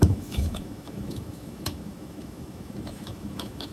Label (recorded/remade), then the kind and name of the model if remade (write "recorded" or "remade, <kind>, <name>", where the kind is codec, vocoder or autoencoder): remade, autoencoder, DAC-VAE